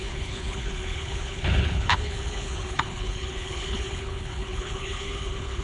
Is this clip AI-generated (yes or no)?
yes